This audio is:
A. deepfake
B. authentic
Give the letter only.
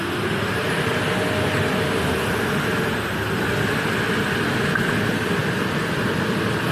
B